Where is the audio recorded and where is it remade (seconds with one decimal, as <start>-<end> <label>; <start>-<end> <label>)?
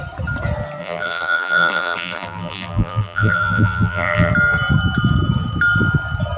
0.0-0.8 recorded; 0.8-4.3 remade; 4.3-6.4 recorded